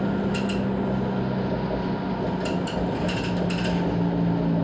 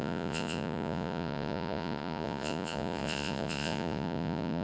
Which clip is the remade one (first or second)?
second